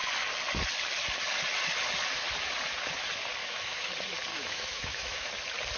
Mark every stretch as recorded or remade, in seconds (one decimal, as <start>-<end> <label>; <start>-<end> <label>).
0.0-3.4 recorded; 3.4-3.9 remade; 3.9-4.3 recorded; 4.3-5.3 remade; 5.3-5.8 recorded